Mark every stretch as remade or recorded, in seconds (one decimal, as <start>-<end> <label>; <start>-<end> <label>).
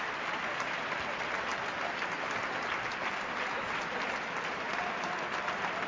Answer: 0.0-1.5 remade; 1.5-3.8 recorded; 3.8-5.9 remade